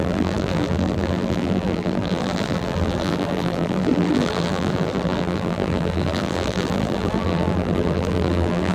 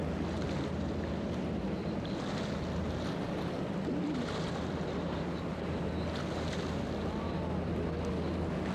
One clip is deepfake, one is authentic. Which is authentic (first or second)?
second